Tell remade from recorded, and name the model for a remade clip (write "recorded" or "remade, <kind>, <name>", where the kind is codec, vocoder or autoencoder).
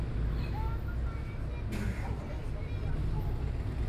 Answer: recorded